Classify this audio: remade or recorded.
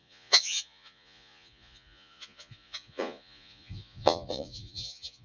remade